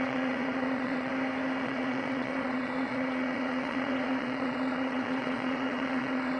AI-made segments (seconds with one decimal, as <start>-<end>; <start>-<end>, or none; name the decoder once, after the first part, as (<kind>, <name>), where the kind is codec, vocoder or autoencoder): 0.0-1.1 (vocoder, Vocos); 1.6-6.4